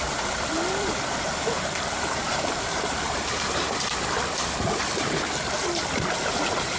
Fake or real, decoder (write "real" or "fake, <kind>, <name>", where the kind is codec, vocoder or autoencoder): fake, vocoder, BigVGAN v2